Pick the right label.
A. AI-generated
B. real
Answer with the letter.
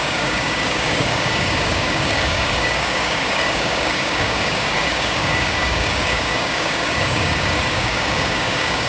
A